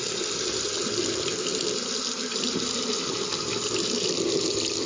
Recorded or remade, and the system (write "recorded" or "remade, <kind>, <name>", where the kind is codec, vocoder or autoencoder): recorded